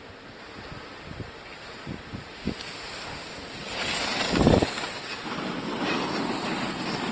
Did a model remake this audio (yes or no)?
no